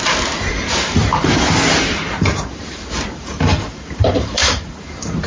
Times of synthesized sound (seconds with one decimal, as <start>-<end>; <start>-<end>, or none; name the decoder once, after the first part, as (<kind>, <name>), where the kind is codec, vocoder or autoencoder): 0.0-5.3 (vocoder, BigVGAN v2)